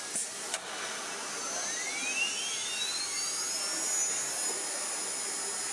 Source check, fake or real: real